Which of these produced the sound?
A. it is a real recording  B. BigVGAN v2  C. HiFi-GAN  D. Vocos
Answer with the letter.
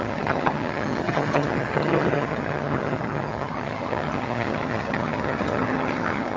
C